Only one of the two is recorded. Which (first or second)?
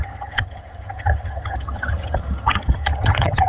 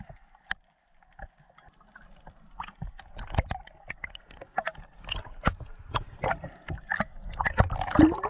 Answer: second